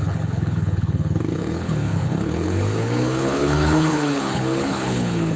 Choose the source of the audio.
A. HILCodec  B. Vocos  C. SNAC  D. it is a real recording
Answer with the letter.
A